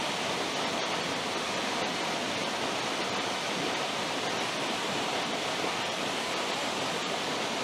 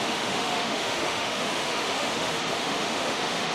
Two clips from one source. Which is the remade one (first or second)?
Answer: second